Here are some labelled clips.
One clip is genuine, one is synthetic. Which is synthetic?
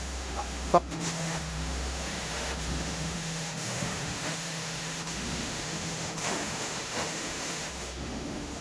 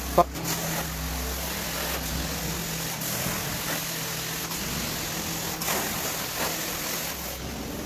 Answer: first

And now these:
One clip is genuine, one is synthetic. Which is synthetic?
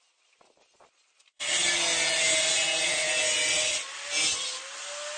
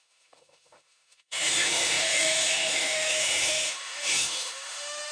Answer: second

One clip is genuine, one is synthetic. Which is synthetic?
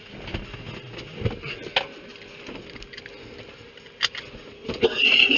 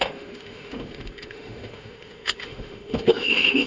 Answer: second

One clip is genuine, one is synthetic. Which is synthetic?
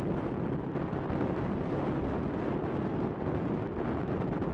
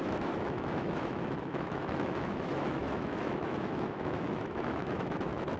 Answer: second